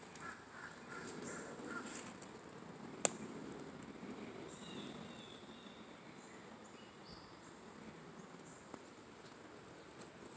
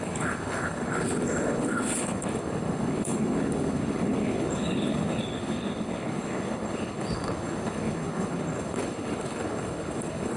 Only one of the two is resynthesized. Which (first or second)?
second